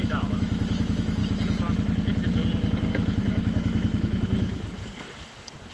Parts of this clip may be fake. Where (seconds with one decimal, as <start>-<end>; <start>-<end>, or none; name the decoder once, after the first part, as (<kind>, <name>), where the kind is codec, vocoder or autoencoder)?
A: 0.0-1.2 (autoencoder, DAC-VAE); 2.9-4.8